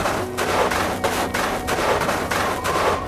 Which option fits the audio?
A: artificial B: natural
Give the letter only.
B